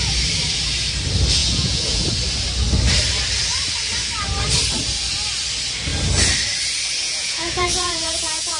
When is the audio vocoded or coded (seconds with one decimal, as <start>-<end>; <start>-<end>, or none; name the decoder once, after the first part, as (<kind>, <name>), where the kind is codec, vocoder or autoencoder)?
1.4-2.1 (vocoder, Vocos); 7.0-8.6